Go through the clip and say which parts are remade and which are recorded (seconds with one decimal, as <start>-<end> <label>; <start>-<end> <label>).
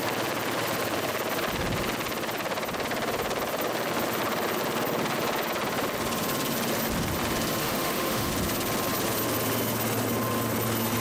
0.0-7.6 recorded; 7.6-8.3 remade; 8.3-11.0 recorded